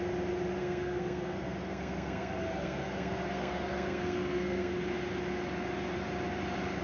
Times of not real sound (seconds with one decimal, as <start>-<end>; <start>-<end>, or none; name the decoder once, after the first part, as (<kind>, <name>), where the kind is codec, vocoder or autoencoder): 0.6-4.7 (codec, SNAC)